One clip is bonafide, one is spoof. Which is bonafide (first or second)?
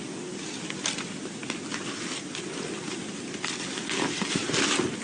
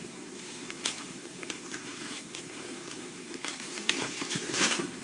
first